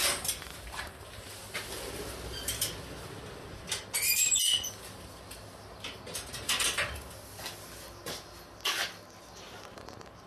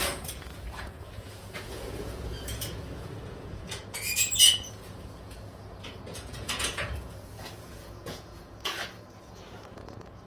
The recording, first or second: first